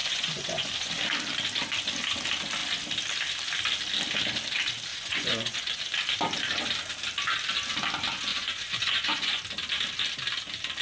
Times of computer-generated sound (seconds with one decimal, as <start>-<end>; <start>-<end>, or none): 0.0-0.9; 4.9-5.8; 8.3-9.4